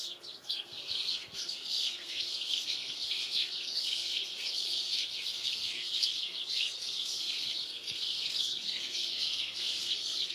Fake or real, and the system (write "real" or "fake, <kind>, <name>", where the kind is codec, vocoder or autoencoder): fake, codec, SNAC